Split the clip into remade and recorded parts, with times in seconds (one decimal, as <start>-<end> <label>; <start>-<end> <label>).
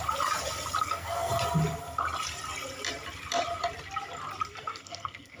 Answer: 0.0-0.8 recorded; 0.8-1.3 remade; 1.3-4.5 recorded; 4.5-5.4 remade